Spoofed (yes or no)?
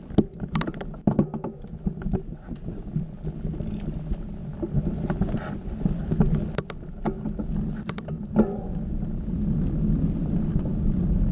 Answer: no